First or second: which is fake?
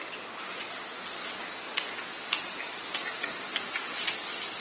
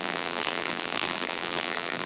second